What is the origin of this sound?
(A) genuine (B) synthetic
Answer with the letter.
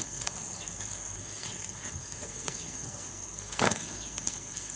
B